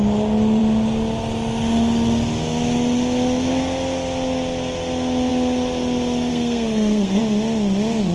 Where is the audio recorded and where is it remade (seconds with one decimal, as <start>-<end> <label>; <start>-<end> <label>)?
0.0-6.3 recorded; 6.3-7.2 remade; 7.2-8.1 recorded

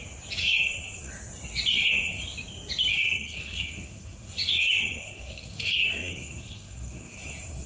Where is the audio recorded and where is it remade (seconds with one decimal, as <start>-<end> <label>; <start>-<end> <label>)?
0.0-0.4 recorded; 0.4-1.1 remade; 1.1-1.7 recorded; 1.7-2.2 remade; 2.2-2.9 recorded; 2.9-7.7 remade

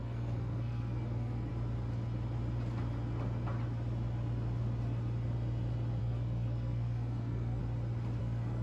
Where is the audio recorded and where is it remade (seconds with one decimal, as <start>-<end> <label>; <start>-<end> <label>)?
0.0-1.5 remade; 1.5-6.0 recorded; 6.0-7.6 remade; 7.6-8.2 recorded; 8.2-8.6 remade

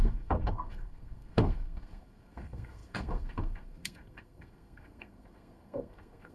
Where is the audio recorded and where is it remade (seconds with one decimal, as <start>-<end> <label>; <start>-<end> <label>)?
0.0-6.3 remade